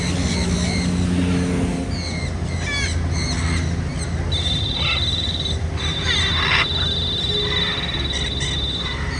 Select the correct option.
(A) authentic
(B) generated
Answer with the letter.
A